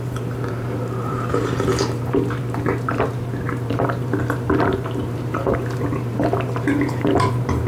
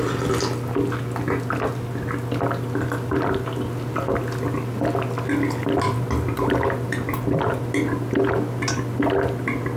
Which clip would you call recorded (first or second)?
second